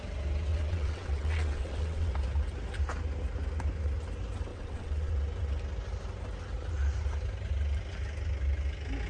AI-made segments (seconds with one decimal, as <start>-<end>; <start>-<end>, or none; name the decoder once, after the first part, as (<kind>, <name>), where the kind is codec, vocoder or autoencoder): 0.5-2.1 (vocoder, WaveNeXt); 4.5-5.1